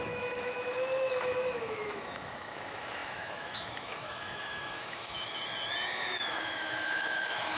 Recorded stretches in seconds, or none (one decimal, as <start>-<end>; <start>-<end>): 5.4-6.0